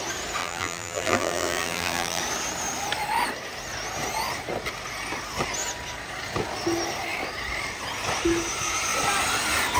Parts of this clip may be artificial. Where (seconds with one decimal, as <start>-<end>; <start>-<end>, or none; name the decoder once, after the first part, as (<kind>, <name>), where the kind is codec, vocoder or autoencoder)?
0.4-2.2 (vocoder, BigVGAN v2)

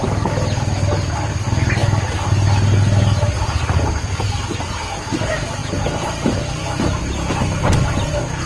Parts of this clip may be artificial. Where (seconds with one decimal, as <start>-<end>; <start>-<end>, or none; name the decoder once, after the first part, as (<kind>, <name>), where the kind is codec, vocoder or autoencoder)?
none

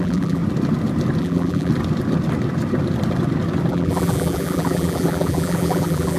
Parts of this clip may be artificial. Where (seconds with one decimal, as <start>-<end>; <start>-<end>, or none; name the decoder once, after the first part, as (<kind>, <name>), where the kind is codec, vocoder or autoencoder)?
0.0-0.4 (vocoder, BigVGAN v2); 1.2-1.7; 3.7-6.2

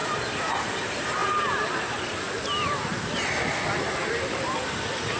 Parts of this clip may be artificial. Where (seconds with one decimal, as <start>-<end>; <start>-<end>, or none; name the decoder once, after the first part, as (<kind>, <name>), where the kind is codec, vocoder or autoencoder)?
0.0-1.2 (vocoder, BigVGAN v2); 4.3-5.2